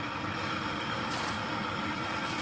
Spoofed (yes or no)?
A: no